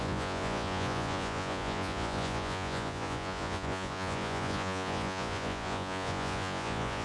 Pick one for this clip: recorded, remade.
remade